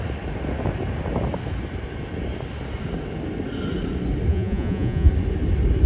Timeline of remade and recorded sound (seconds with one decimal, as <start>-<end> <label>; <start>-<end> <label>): 0.0-4.3 recorded; 4.3-5.1 remade; 5.1-5.9 recorded